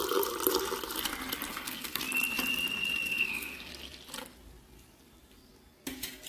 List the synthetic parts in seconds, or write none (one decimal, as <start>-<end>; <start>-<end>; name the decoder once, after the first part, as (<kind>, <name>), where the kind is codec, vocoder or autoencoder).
1.5-2.0 (codec, SNAC); 3.1-3.7